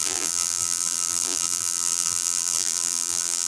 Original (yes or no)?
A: no